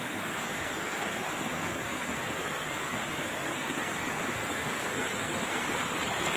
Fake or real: fake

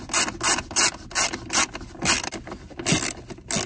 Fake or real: real